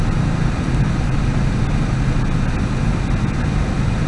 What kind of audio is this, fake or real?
real